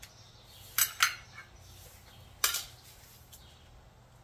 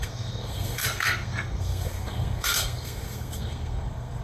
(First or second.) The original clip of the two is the first